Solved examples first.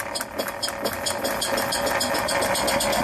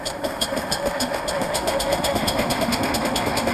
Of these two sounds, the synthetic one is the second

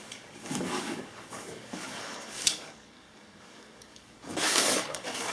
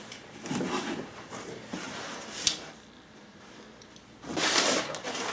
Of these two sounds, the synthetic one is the first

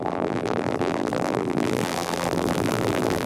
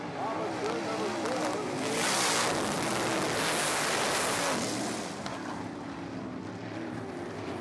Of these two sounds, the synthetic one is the first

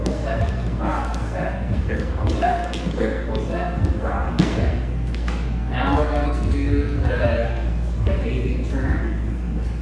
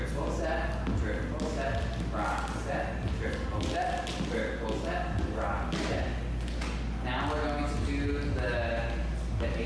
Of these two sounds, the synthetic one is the first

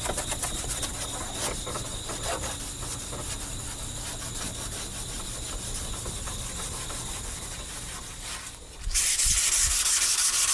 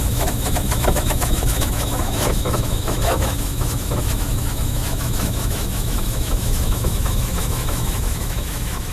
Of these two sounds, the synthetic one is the second